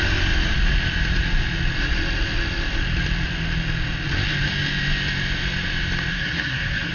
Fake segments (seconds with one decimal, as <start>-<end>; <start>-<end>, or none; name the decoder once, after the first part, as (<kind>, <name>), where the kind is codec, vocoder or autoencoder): 6.1-6.9 (codec, SNAC)